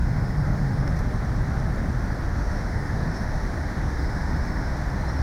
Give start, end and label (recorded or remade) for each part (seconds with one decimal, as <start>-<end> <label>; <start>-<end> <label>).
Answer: 0.0-0.9 remade; 0.9-2.3 recorded; 2.3-4.7 remade; 4.7-5.2 recorded

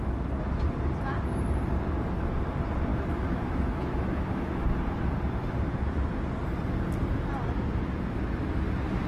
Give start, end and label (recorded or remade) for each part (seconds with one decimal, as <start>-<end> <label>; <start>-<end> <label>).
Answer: 0.0-2.9 recorded; 2.9-4.5 remade; 4.5-9.1 recorded